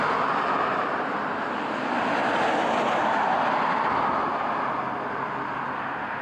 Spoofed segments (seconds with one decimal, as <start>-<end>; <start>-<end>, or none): none